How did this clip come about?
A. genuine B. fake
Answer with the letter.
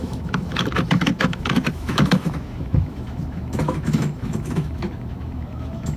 B